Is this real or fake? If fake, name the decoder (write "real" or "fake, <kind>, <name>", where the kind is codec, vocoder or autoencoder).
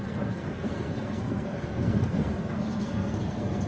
fake, codec, SNAC